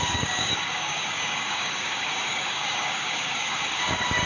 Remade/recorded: remade